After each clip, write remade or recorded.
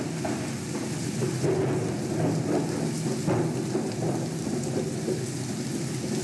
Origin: recorded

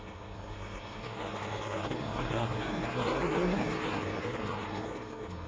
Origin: remade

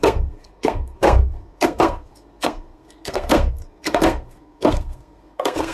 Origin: remade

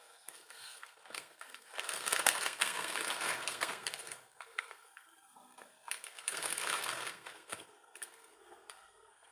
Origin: remade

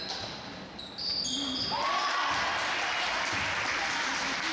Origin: recorded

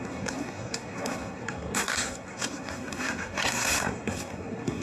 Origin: remade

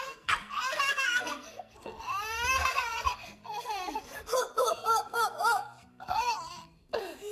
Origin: remade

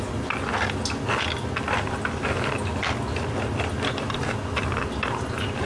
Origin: recorded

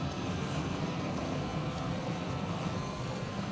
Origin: remade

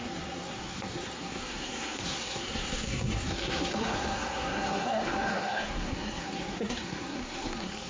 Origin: remade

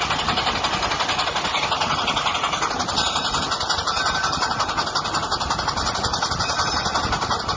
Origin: recorded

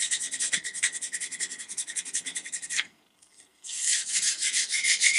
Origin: remade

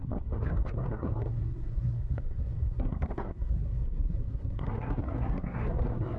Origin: remade